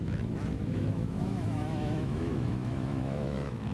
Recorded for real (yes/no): no